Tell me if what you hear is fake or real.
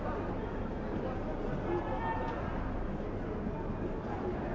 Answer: real